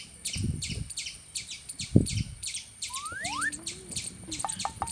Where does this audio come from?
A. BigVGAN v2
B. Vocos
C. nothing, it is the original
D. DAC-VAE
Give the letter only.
A